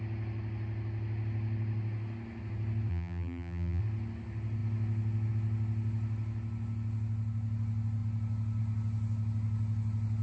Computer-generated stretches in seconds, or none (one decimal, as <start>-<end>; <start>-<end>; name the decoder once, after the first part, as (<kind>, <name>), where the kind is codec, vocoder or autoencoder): 2.9-3.8 (vocoder, BigVGAN v2)